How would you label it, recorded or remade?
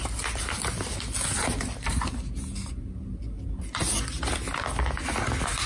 recorded